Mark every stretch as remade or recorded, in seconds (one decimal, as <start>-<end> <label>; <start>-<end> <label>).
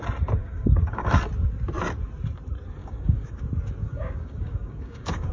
0.0-0.4 recorded; 0.4-1.1 remade; 1.1-2.8 recorded; 2.8-3.4 remade; 3.4-3.8 recorded; 3.8-5.3 remade